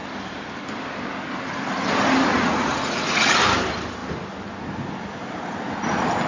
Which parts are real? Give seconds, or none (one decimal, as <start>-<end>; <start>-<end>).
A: 0.0-2.3; 3.4-6.3